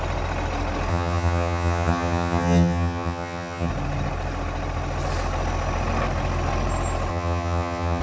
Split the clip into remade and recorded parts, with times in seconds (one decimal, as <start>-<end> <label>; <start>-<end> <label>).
0.0-0.9 recorded; 0.9-3.7 remade; 3.7-7.1 recorded; 7.1-8.0 remade